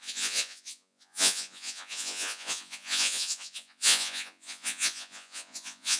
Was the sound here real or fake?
fake